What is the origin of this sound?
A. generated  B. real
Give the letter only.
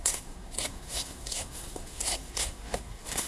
A